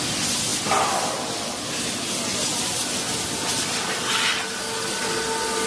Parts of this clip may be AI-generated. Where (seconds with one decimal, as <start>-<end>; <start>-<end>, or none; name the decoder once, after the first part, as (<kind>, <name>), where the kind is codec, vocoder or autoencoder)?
none